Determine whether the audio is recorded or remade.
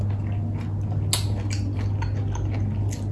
recorded